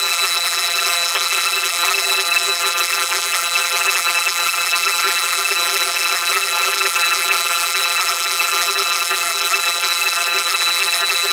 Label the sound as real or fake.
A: fake